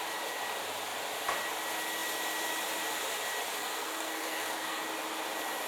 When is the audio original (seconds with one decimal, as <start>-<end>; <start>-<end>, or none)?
0.0-3.6; 4.8-5.7